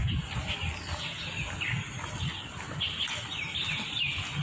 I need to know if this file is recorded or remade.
recorded